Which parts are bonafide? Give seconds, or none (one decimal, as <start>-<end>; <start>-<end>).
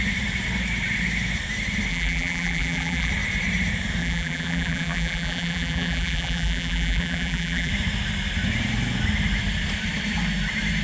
0.0-1.9; 3.1-4.0; 7.7-10.8